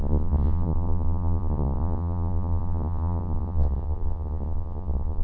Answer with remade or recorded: remade